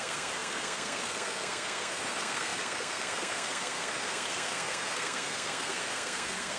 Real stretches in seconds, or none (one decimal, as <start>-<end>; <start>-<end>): none